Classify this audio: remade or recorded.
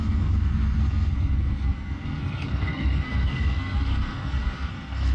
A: remade